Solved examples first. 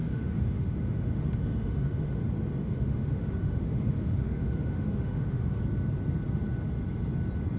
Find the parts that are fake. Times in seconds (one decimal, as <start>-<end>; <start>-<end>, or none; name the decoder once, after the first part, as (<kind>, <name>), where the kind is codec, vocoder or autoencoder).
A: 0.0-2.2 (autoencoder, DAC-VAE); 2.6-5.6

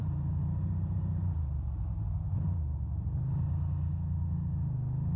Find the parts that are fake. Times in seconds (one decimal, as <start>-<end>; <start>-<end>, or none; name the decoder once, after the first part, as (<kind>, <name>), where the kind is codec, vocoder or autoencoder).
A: 0.0-3.1 (vocoder, BigVGAN v2)

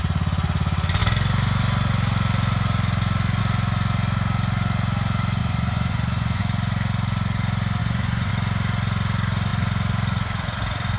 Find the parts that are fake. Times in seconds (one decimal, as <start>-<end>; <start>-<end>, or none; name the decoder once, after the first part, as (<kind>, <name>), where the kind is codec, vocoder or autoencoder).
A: 5.4-6.4 (vocoder, Vocos); 7.8-8.3